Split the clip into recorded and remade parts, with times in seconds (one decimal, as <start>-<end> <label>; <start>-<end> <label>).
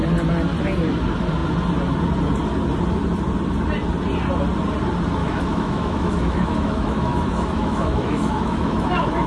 0.0-5.2 recorded; 5.2-9.3 remade